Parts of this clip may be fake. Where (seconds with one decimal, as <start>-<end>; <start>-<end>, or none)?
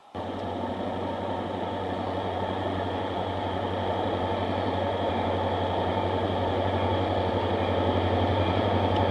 0.0-5.1; 5.9-7.3; 8.3-9.1